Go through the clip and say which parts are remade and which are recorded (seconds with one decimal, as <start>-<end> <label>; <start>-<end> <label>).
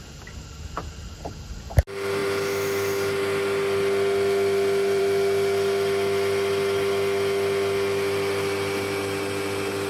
0.0-9.9 recorded